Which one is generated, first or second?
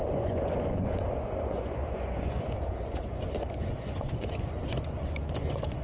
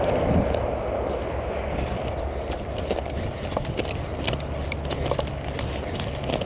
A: first